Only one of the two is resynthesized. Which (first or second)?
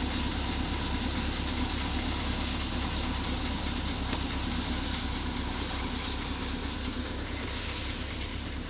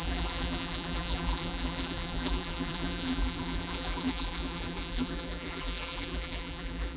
second